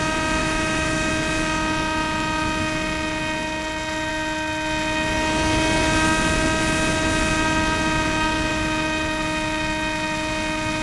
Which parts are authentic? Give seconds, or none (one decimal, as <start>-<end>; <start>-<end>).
0.0-0.4; 1.1-10.8